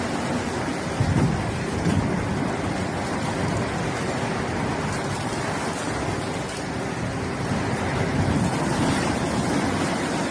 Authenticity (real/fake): real